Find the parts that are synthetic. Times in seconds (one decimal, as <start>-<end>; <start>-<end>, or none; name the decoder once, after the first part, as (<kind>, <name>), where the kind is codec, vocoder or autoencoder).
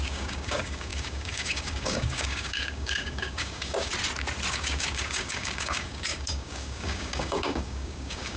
0.0-3.9 (codec, DAC); 4.5-8.4